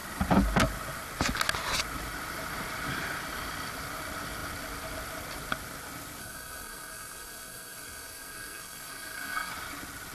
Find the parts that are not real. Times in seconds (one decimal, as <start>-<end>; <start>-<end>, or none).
6.2-9.5